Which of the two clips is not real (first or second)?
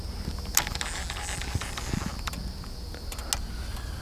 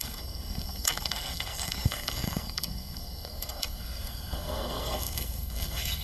second